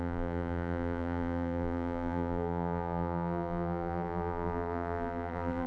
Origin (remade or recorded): remade